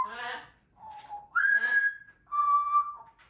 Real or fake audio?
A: real